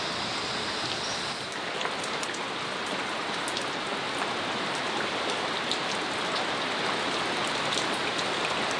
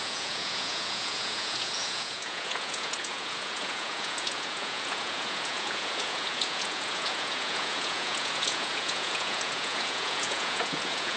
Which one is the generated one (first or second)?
second